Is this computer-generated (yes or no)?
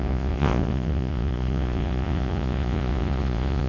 yes